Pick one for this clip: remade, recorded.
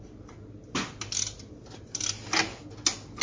recorded